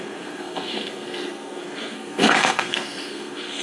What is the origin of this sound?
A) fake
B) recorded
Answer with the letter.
A